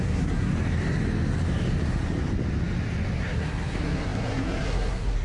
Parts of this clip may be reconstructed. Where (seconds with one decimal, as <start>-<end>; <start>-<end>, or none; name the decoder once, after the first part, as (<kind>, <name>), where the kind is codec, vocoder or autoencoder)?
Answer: 0.0-0.5 (codec, SNAC); 3.2-5.2